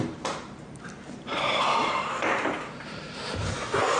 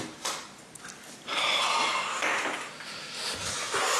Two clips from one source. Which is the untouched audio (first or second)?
second